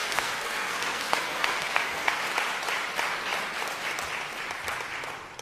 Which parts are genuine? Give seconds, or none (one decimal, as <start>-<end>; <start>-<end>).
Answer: 2.2-5.4